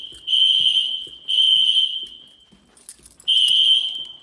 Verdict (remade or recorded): recorded